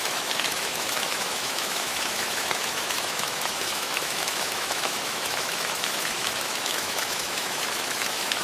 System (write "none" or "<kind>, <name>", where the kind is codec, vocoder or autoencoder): autoencoder, DAC-VAE